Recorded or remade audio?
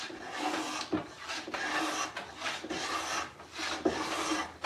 recorded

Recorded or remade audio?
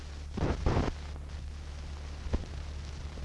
recorded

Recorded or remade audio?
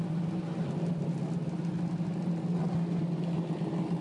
recorded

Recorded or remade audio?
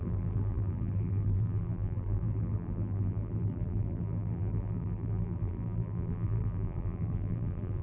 remade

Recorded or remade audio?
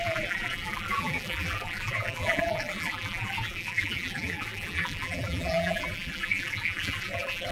remade